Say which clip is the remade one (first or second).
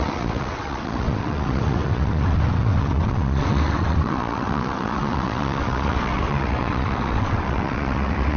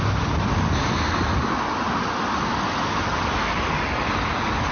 first